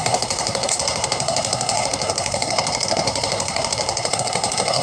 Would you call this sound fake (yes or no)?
yes